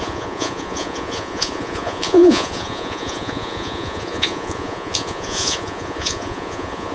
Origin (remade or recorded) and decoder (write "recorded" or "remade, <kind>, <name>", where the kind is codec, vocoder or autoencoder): remade, vocoder, Vocos